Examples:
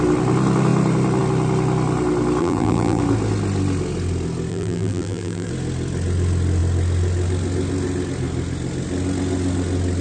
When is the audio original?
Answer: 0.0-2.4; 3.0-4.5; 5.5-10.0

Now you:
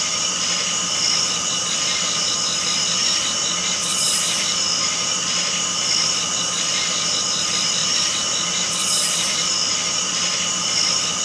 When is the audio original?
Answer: 0.0-7.8; 9.7-11.2